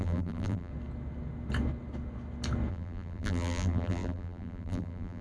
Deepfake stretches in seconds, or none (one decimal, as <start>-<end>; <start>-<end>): 0.0-0.7; 2.7-5.2